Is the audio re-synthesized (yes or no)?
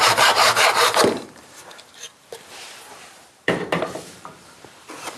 yes